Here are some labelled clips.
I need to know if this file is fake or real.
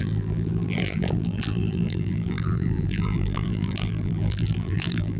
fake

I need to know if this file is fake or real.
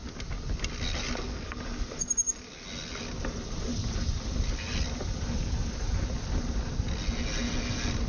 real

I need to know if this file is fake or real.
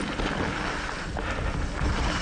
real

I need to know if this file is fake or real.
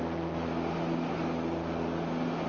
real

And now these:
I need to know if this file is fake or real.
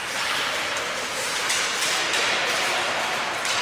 fake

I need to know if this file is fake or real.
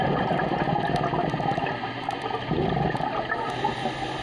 real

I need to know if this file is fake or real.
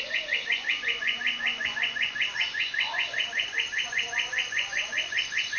fake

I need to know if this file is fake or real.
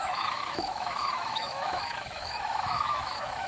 fake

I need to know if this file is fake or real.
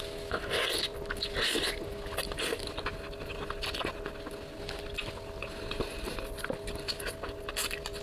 real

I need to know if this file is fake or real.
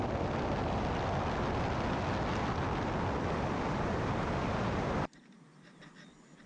real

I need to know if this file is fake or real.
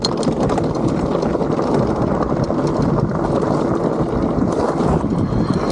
real